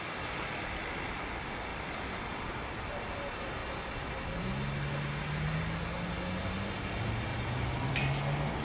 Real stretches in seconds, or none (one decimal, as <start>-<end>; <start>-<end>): 0.0-1.7; 2.9-7.3; 7.9-8.6